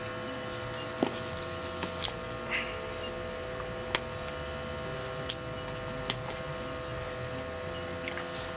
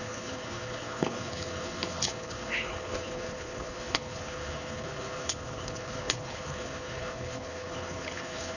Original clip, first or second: first